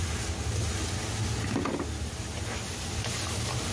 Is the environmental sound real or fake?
real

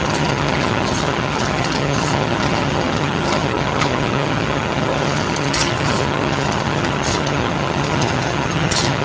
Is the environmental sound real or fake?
fake